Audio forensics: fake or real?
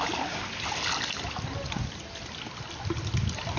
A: real